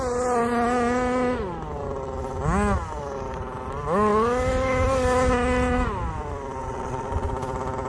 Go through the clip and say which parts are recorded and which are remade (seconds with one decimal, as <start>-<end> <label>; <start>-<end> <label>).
0.0-6.6 recorded; 6.6-7.3 remade; 7.3-7.9 recorded